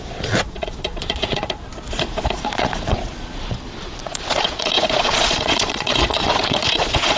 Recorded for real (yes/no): no